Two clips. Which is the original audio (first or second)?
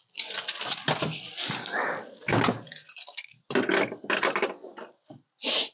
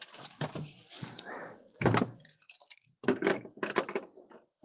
first